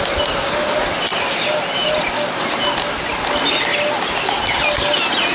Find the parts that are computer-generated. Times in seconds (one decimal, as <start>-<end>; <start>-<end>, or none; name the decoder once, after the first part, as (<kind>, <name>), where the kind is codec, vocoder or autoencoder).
none